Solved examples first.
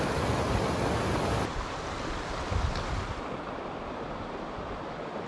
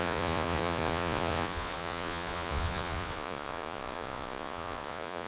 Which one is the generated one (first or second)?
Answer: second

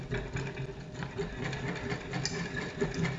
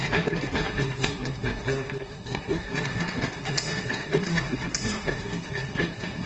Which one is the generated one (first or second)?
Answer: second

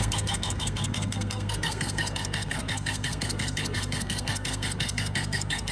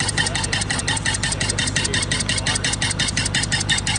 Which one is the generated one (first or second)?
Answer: first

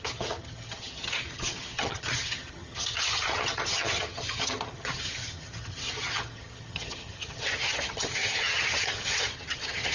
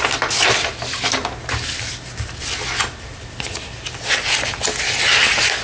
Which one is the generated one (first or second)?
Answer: first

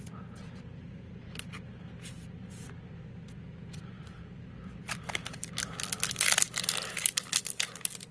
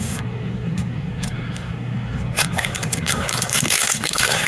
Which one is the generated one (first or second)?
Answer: second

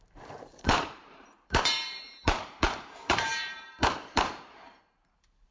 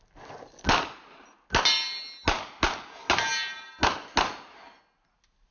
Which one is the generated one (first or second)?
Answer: first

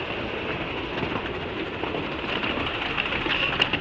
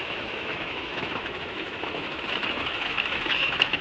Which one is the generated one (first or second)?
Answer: second